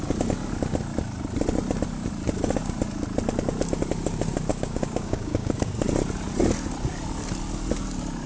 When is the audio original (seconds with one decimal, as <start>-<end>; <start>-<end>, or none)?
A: 0.0-4.5; 5.8-8.3